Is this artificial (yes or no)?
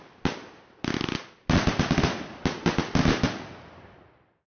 no